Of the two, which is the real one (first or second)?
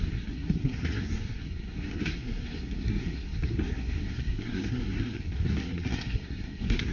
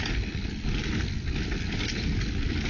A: second